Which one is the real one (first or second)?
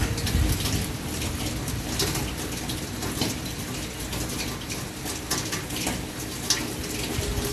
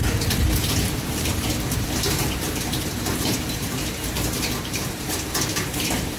first